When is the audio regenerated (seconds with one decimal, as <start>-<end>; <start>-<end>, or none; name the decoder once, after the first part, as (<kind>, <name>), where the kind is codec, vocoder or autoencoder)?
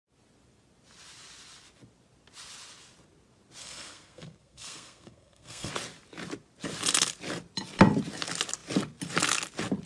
3.6-5.7 (codec, SNAC)